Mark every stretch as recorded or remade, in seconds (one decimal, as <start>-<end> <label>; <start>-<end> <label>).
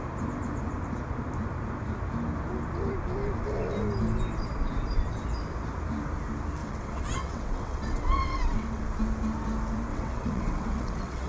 0.0-6.6 recorded; 6.6-8.8 remade; 8.8-9.9 recorded; 9.9-11.3 remade